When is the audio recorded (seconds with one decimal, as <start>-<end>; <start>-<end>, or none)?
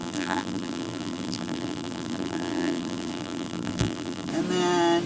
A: 4.3-5.1